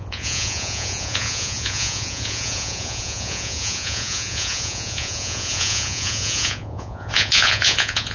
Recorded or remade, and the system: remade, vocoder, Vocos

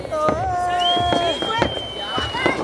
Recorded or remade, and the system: recorded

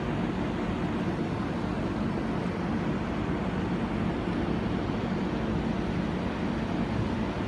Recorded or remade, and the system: recorded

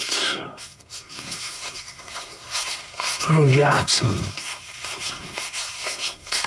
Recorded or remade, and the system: remade, codec, SNAC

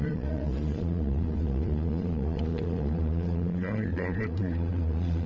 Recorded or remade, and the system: remade, vocoder, Vocos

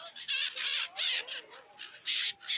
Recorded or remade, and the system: recorded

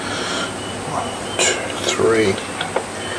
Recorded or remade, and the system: recorded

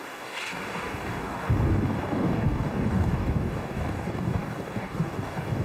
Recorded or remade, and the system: remade, codec, DAC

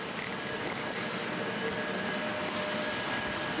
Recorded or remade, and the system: recorded